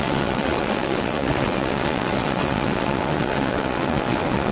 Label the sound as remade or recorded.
remade